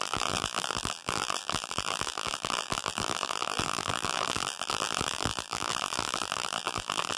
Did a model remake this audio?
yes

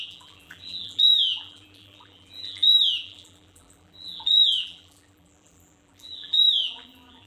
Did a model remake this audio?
yes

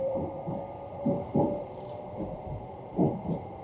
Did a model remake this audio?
yes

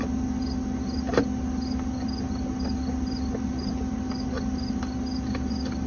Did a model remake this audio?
no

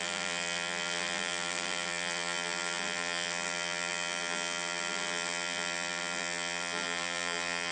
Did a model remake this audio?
yes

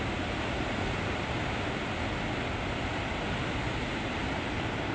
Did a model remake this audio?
no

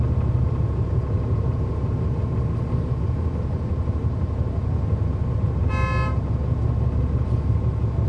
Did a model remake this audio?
no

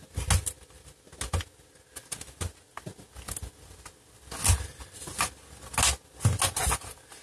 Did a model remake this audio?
no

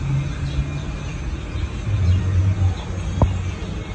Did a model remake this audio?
no